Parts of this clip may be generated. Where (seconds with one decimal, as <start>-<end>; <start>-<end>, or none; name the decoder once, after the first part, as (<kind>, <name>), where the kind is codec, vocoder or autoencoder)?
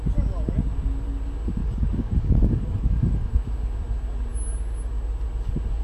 1.6-3.3 (codec, DAC)